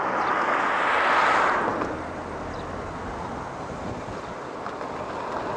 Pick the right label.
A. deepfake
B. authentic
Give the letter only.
B